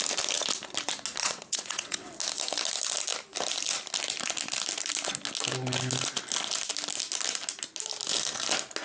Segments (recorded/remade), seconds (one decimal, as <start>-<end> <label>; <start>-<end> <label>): 0.0-1.2 recorded; 1.2-2.1 remade; 2.1-8.8 recorded